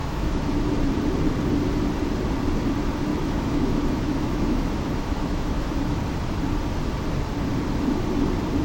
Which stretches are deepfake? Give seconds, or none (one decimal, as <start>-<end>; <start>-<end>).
0.0-0.8; 3.1-6.0

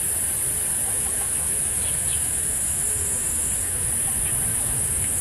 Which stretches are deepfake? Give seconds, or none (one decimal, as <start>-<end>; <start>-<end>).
0.8-3.9; 4.5-5.2

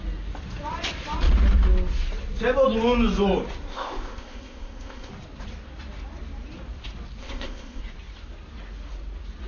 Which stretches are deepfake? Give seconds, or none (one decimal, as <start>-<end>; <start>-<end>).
3.7-5.1; 7.2-7.8